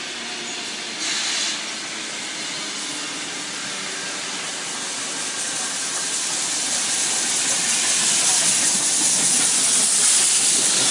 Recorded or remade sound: recorded